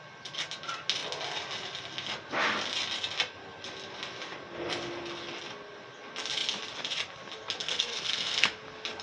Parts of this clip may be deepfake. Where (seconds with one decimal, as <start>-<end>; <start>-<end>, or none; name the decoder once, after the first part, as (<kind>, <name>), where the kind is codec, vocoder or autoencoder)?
7.6-8.5 (codec, SNAC)